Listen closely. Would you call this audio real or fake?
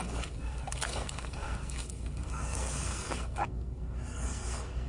fake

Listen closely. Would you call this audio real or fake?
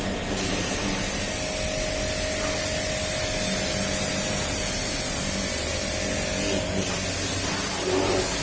real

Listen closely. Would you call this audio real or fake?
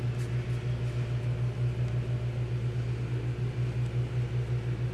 real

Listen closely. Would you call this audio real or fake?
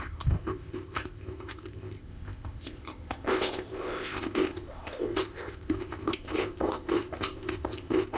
fake